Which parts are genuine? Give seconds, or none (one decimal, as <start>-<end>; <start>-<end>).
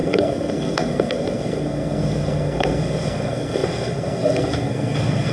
none